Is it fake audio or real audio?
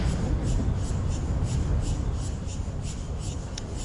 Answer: real